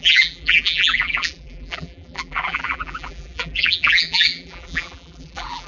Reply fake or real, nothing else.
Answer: fake